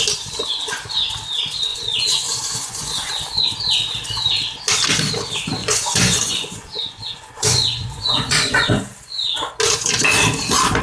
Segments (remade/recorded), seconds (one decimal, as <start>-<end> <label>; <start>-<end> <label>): 0.0-1.7 recorded; 1.7-3.1 remade; 3.1-5.6 recorded; 5.6-8.8 remade; 8.8-10.8 recorded